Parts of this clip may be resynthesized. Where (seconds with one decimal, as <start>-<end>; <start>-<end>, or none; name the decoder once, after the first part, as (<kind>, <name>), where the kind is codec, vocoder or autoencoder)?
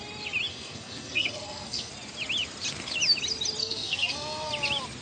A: 0.5-1.9 (codec, SNAC); 3.6-4.5